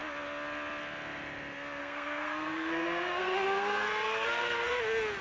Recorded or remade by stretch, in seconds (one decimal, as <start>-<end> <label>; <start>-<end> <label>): 0.0-1.8 recorded; 1.8-4.8 remade; 4.8-5.2 recorded